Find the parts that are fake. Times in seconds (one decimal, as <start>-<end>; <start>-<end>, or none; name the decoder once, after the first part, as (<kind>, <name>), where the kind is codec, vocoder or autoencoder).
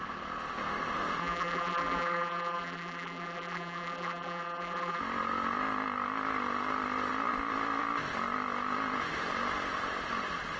1.2-5.0 (vocoder, BigVGAN v2)